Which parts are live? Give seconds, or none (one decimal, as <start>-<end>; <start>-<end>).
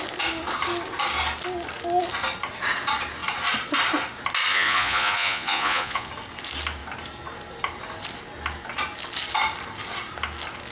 0.0-4.5; 6.1-10.7